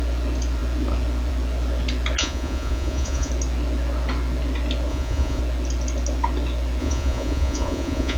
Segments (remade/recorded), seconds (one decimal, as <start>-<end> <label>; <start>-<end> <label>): 0.0-2.2 recorded; 2.2-3.3 remade; 3.3-4.9 recorded; 4.9-5.4 remade; 5.4-6.8 recorded; 6.8-8.2 remade